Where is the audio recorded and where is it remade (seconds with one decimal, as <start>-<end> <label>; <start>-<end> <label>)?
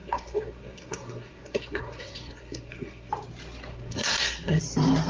0.0-3.1 remade; 3.1-3.7 recorded; 3.7-4.6 remade; 4.6-5.1 recorded